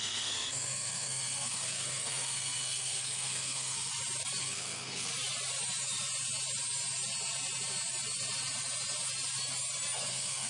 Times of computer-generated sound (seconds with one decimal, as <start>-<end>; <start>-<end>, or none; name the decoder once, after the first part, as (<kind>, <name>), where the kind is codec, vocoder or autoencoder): 0.0-3.9 (codec, SNAC); 4.4-5.1; 10.1-10.5